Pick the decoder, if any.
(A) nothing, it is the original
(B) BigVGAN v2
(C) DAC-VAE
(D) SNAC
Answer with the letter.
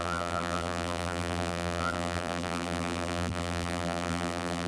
B